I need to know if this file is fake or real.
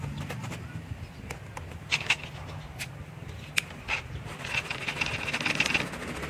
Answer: real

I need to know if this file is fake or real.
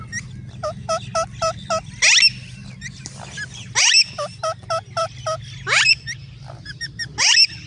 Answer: real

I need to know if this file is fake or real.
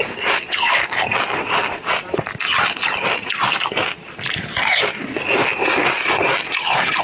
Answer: real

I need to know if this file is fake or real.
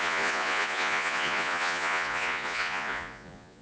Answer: fake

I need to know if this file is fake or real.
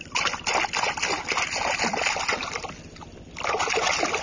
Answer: real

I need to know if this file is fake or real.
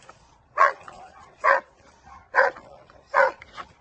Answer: fake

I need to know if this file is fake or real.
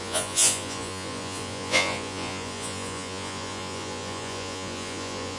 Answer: fake